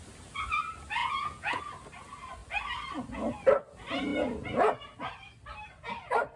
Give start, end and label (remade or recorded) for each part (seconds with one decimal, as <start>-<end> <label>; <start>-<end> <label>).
0.0-1.0 recorded; 1.0-1.6 remade; 1.6-6.4 recorded